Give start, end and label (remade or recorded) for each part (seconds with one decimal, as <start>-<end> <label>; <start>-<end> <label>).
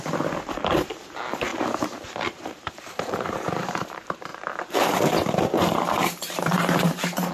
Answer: 0.0-4.3 remade; 4.3-5.6 recorded; 5.6-7.3 remade